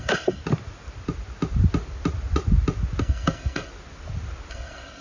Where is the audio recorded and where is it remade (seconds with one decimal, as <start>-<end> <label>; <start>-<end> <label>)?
0.0-0.4 remade; 0.4-3.0 recorded; 3.0-3.7 remade; 3.7-4.5 recorded; 4.5-5.0 remade